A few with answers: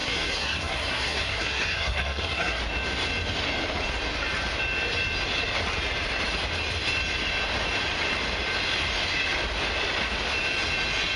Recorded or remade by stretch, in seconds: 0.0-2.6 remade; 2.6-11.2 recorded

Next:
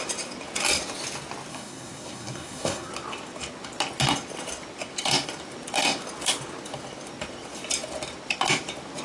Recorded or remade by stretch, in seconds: 0.0-1.5 recorded; 1.5-2.9 remade; 2.9-9.0 recorded

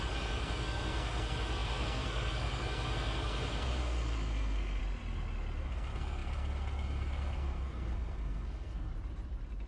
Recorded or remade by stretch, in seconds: 0.0-4.8 remade; 4.8-5.6 recorded; 5.6-8.9 remade; 8.9-9.7 recorded

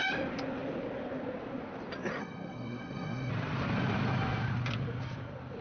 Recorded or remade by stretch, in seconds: 0.0-2.2 recorded; 2.2-3.3 remade; 3.3-5.6 recorded

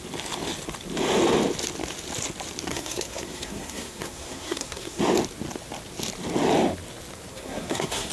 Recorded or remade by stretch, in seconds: 0.0-2.7 recorded; 2.7-5.0 remade; 5.0-7.3 recorded; 7.3-8.1 remade

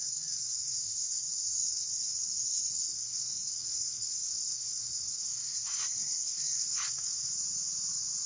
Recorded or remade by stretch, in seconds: 0.0-7.3 remade; 7.3-8.3 recorded

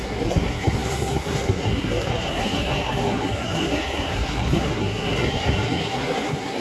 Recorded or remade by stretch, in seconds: 0.0-6.6 remade